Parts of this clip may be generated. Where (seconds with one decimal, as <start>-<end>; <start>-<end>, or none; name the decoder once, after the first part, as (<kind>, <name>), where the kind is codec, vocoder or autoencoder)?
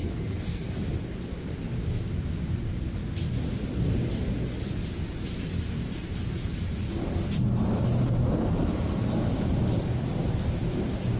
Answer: 0.0-0.7 (codec, SNAC)